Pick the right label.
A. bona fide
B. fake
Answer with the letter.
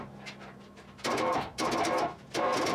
A